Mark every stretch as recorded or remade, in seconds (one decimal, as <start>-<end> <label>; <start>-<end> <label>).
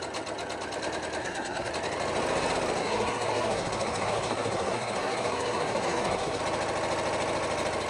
0.0-1.2 recorded; 1.2-1.7 remade; 1.7-2.8 recorded; 2.8-6.4 remade; 6.4-7.9 recorded